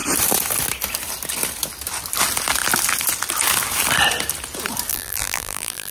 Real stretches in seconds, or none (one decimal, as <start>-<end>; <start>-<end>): 0.0-4.9

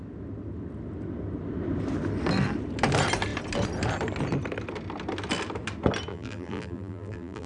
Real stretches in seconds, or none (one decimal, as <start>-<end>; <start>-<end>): 0.0-6.1

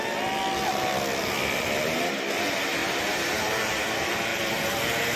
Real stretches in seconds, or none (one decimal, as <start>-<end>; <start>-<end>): 0.0-2.8; 3.9-4.3; 4.8-5.2

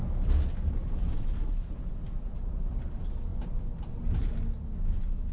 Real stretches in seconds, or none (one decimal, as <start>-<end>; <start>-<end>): 0.0-5.3